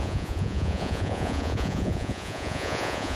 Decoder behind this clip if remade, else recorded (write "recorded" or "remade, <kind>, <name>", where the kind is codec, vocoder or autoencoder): remade, vocoder, Vocos